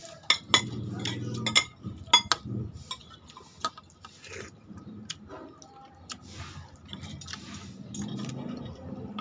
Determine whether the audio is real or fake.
real